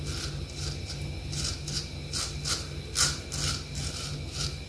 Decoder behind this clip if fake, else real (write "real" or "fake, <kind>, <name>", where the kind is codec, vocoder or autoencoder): real